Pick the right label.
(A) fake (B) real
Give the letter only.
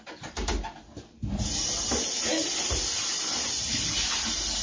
B